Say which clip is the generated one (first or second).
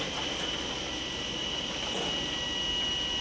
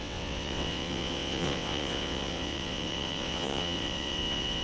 second